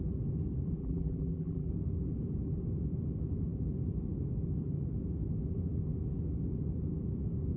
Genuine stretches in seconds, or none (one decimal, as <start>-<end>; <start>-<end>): 0.0-0.8; 1.7-7.6